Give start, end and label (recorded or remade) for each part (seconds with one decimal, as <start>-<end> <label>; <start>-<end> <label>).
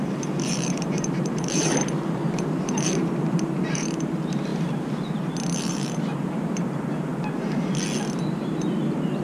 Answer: 0.0-4.5 remade; 4.5-5.6 recorded; 5.6-7.1 remade; 7.1-8.3 recorded; 8.3-9.2 remade